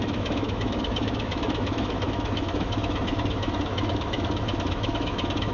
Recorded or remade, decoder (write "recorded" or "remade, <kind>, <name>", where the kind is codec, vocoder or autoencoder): remade, autoencoder, DAC-VAE